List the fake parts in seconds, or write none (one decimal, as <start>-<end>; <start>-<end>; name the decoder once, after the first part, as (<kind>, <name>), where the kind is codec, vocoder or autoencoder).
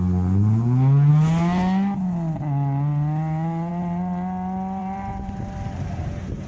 4.8-6.5 (vocoder, BigVGAN v2)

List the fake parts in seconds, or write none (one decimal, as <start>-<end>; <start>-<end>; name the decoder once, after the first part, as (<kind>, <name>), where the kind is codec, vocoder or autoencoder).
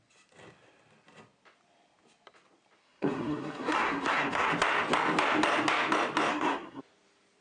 2.8-4.5 (codec, SNAC); 6.3-6.8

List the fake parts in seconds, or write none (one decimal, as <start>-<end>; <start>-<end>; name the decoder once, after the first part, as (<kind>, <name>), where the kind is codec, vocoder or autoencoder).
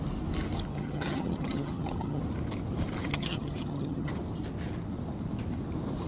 0.7-2.2 (vocoder, HiFi-GAN); 3.1-4.1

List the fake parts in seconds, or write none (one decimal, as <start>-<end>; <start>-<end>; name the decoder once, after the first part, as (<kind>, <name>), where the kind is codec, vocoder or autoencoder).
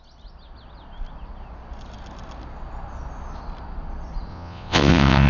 4.3-5.3 (vocoder, WaveNeXt)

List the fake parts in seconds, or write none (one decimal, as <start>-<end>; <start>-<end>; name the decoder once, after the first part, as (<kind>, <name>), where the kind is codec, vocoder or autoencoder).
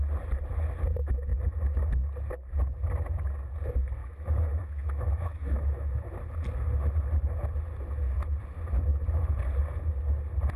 4.0-6.0 (autoencoder, DAC-VAE)